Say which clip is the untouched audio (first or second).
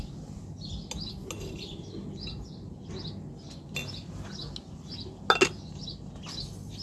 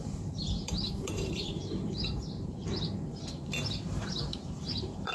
first